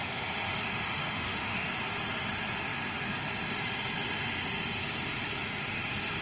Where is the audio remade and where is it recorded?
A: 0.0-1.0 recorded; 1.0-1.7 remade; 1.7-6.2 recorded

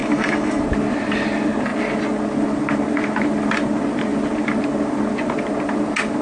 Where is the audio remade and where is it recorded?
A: 0.0-0.6 remade; 0.6-6.2 recorded

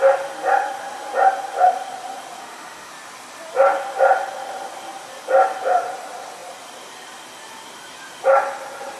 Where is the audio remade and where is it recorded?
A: 0.0-2.4 recorded; 2.4-2.9 remade; 2.9-9.0 recorded

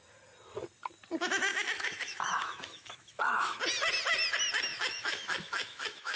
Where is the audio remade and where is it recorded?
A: 0.0-1.5 recorded; 1.5-3.6 remade; 3.6-4.7 recorded; 4.7-6.2 remade

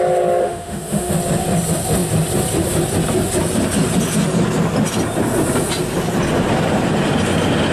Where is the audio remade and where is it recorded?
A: 0.0-0.4 recorded; 0.4-1.1 remade; 1.1-7.7 recorded

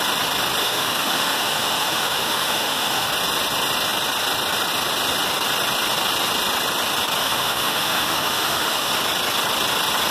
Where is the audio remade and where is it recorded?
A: 0.0-0.6 recorded; 0.6-3.1 remade; 3.1-7.2 recorded; 7.2-8.9 remade; 8.9-10.1 recorded